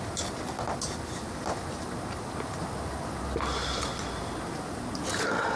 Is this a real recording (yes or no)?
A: yes